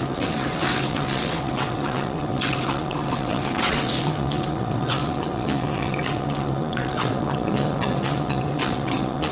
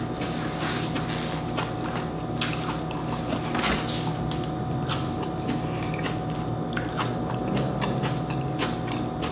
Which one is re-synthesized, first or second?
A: first